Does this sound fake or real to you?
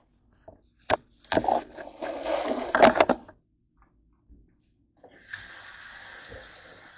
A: real